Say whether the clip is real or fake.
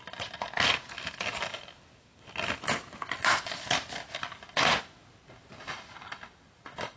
real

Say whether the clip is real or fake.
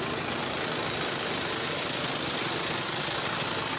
real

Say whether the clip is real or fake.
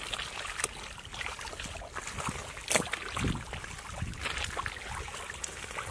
real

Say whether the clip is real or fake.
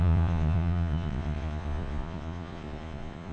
fake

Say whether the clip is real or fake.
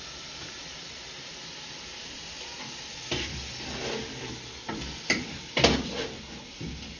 real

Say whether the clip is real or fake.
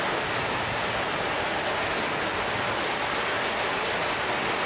real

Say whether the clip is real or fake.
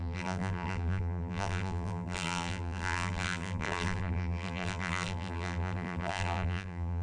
fake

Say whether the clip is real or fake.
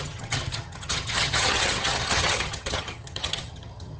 fake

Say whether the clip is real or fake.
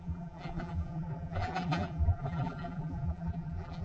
fake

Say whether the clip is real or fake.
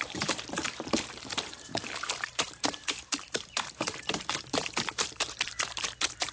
fake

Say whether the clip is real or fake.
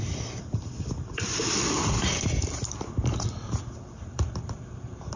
fake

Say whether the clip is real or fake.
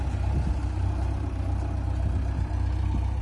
real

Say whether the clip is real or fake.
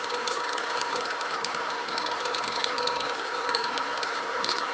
fake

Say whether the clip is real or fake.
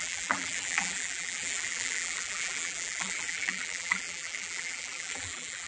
fake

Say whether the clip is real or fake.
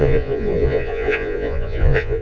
fake